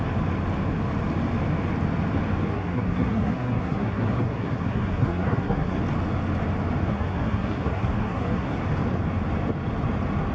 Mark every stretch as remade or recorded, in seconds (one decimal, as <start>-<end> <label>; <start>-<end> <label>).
0.0-2.5 recorded; 2.5-5.8 remade; 5.8-6.9 recorded; 6.9-8.6 remade; 8.6-10.3 recorded